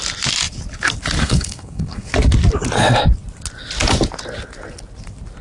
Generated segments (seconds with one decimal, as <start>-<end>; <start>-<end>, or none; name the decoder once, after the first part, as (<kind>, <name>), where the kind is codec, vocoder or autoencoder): 1.2-2.1 (codec, SNAC)